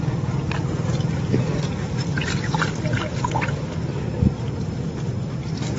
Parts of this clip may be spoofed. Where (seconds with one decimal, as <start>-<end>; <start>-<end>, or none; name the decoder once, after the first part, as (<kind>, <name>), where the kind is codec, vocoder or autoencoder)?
none